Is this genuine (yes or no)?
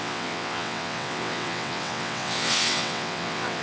no